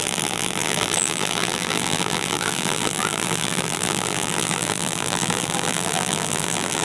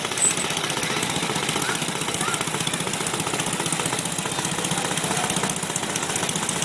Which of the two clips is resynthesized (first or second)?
first